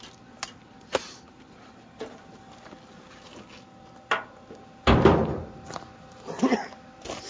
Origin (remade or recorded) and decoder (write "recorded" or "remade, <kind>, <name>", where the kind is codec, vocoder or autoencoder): recorded